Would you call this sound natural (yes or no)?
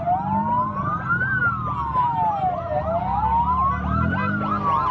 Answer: yes